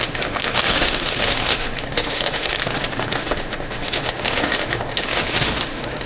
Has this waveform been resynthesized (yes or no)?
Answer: yes